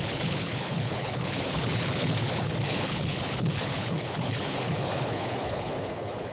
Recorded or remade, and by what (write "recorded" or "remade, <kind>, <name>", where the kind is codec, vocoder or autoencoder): remade, codec, HILCodec